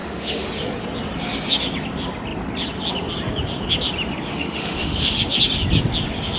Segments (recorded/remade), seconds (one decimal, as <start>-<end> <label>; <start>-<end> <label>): 0.0-0.5 remade; 0.5-4.3 recorded; 4.3-5.2 remade; 5.2-6.4 recorded